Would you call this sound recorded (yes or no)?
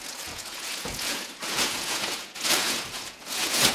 no